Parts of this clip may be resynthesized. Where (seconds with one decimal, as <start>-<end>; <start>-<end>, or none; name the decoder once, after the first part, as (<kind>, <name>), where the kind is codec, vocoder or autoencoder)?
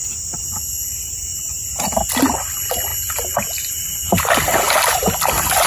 0.0-1.3 (vocoder, BigVGAN v2); 2.5-2.9; 3.8-5.7